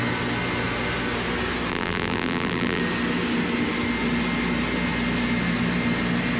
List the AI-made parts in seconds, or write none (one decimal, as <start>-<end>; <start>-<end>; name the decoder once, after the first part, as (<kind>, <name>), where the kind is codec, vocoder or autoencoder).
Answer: 1.7-2.8 (vocoder, BigVGAN v2)